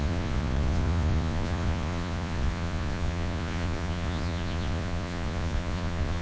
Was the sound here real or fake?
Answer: fake